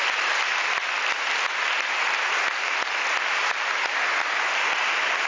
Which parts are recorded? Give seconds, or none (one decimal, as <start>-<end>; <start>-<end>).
0.0-5.3